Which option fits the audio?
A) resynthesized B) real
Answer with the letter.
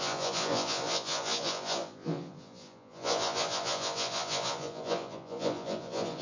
A